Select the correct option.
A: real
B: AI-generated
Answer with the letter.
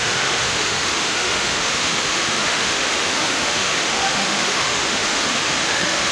B